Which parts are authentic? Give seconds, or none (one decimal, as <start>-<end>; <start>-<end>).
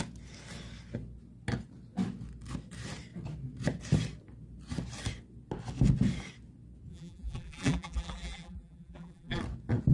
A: 0.0-6.9; 9.4-9.9